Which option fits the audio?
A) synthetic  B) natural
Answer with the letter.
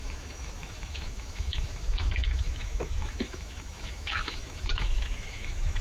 A